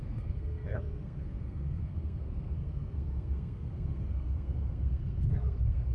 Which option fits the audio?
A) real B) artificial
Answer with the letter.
B